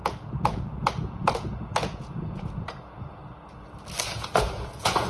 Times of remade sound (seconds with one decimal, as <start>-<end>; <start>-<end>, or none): 0.0-3.2; 4.0-5.1